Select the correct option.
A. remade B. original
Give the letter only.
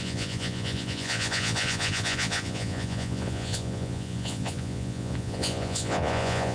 A